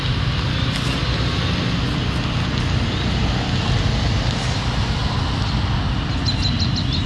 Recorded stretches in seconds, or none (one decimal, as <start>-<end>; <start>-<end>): 0.0-7.1